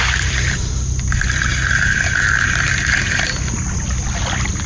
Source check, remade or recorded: recorded